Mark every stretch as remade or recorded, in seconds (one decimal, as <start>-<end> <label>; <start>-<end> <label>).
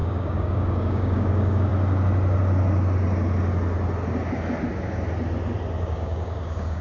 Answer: 0.0-1.7 remade; 1.7-5.8 recorded; 5.8-6.8 remade